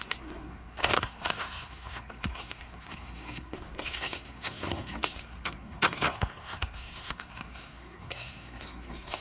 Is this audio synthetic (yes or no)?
yes